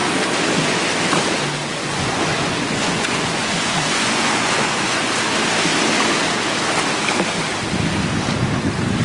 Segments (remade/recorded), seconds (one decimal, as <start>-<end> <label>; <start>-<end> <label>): 0.0-1.7 recorded; 1.7-5.1 remade; 5.1-9.0 recorded